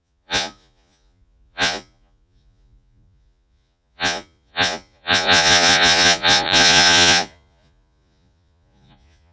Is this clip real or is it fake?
fake